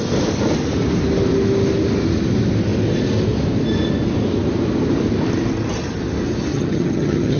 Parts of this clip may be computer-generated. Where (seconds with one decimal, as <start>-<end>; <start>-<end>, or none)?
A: 6.5-7.4